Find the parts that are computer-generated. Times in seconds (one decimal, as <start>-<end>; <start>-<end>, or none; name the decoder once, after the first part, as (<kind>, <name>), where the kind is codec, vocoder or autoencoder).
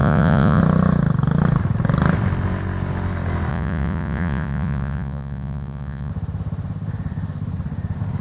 0.0-0.6 (vocoder, Vocos); 3.5-6.1